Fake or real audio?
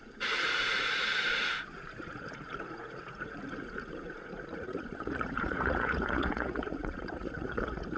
fake